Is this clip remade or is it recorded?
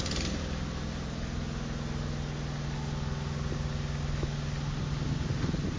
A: recorded